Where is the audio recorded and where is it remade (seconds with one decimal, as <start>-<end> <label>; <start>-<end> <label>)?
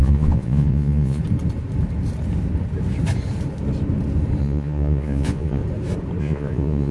0.0-1.2 remade; 1.2-4.4 recorded; 4.4-5.6 remade; 5.6-6.2 recorded; 6.2-6.9 remade